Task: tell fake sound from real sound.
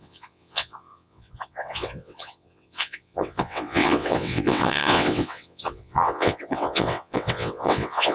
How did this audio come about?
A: fake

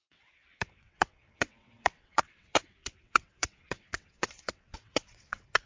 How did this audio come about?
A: fake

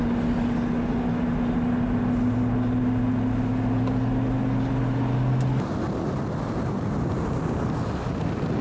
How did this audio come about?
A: real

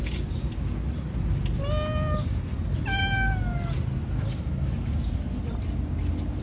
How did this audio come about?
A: real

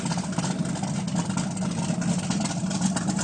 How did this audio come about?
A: real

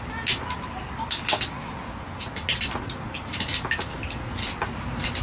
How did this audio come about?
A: real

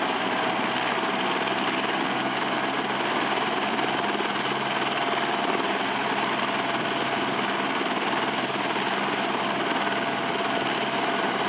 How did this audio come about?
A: real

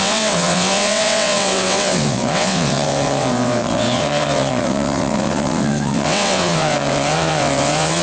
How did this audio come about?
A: fake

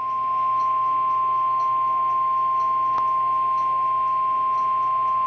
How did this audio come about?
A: real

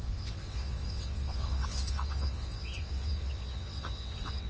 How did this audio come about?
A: fake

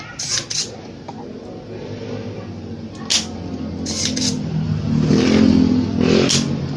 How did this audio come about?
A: real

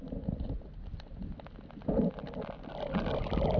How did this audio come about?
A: real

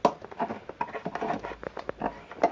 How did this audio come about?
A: real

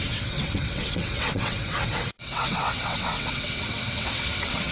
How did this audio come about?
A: fake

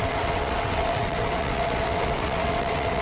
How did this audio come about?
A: fake